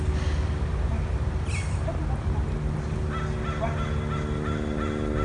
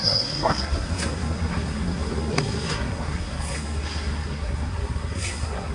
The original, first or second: first